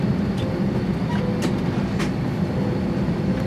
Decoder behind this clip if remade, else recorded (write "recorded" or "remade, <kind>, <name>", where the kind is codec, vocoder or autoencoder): recorded